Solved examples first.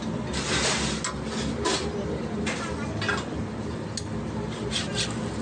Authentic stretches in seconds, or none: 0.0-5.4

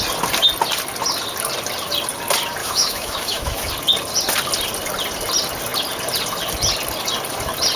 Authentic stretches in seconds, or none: 0.0-2.6; 3.7-7.8